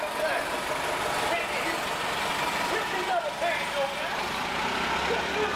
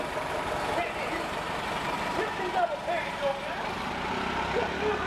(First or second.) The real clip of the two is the first